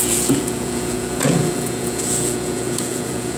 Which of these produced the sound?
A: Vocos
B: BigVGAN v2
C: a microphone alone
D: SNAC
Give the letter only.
A